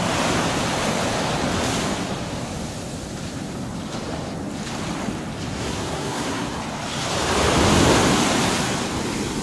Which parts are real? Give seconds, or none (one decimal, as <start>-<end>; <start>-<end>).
0.0-5.5; 6.6-9.4